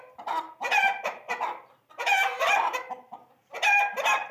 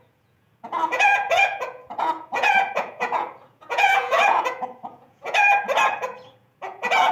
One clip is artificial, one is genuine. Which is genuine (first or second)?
first